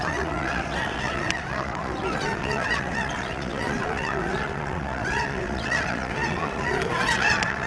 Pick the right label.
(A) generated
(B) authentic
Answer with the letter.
A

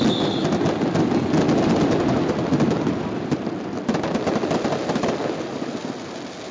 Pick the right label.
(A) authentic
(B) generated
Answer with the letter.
A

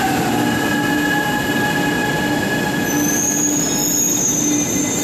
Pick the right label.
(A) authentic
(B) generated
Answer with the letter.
A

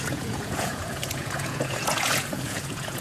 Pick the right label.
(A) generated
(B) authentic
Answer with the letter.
A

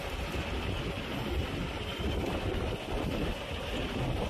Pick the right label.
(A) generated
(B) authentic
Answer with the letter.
B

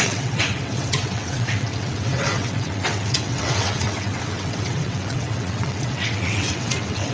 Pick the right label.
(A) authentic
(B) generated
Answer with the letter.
B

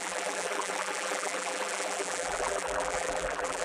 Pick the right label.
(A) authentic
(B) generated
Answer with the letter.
B